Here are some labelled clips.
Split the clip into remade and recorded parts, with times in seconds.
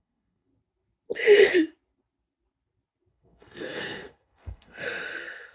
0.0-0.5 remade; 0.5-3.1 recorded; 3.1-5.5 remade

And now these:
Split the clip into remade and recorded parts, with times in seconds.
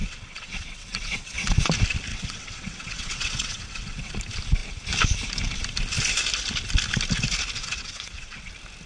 0.0-1.6 remade; 1.6-2.1 recorded; 2.1-4.1 remade; 4.1-7.6 recorded; 7.6-8.5 remade; 8.5-8.9 recorded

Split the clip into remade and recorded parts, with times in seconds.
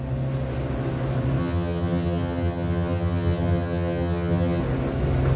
0.0-1.4 recorded; 1.4-4.6 remade; 4.6-5.4 recorded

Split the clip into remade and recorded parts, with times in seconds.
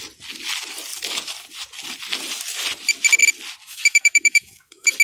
0.0-3.6 recorded; 3.6-5.0 remade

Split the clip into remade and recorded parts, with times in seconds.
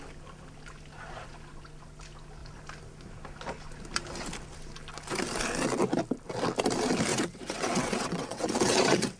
0.0-7.1 recorded; 7.1-9.2 remade